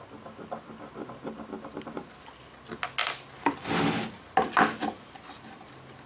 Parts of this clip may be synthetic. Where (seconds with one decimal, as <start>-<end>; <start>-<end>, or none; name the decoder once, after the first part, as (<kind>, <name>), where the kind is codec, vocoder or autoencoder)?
none